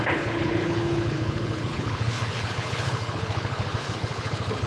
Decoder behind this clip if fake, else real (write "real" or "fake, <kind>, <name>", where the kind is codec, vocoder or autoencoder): fake, codec, HILCodec